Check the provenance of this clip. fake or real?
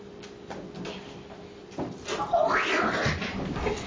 real